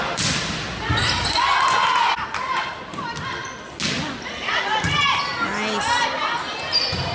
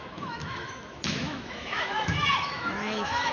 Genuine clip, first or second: first